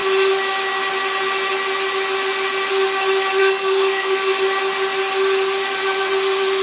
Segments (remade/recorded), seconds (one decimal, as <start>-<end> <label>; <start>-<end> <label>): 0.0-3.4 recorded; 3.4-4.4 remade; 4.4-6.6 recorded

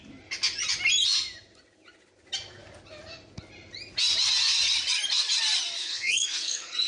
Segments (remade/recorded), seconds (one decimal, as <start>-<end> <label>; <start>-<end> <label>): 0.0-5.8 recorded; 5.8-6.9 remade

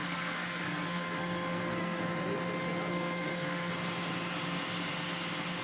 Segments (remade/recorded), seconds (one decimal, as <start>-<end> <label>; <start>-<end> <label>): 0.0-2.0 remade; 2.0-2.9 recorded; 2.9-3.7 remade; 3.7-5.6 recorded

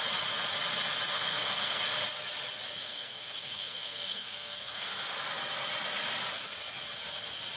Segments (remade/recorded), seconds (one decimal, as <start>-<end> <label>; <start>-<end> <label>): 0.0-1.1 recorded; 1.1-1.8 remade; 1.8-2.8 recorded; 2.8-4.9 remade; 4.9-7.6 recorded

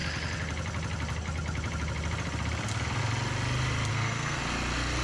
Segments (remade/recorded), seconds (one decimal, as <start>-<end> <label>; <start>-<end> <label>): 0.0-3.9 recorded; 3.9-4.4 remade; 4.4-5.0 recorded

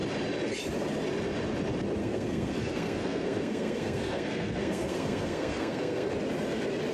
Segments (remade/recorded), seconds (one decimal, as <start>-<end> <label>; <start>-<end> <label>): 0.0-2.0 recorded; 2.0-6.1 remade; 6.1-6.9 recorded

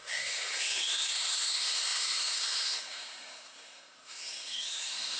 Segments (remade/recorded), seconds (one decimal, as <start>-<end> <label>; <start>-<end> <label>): 0.0-5.2 remade